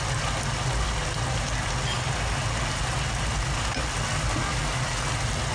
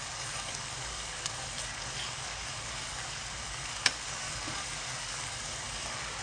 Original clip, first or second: first